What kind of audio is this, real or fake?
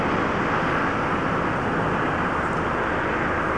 real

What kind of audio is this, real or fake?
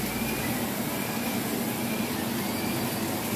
real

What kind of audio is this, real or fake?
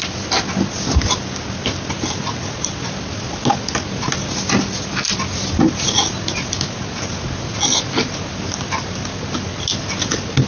real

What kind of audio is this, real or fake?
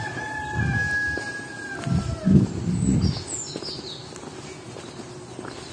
real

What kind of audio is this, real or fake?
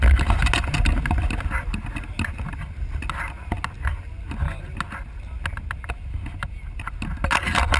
real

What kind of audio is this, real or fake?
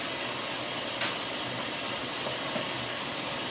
real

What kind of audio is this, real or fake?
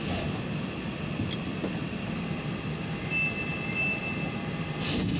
real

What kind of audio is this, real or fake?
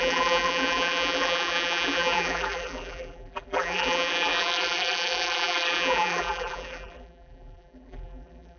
fake